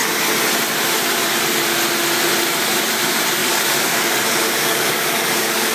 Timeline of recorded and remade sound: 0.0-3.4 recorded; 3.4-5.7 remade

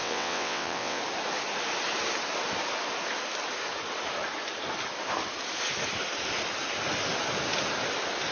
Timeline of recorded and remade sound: 0.0-1.0 remade; 1.0-8.3 recorded

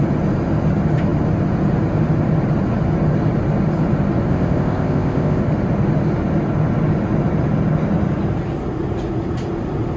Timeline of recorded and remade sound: 0.0-4.3 recorded; 4.3-5.4 remade; 5.4-10.0 recorded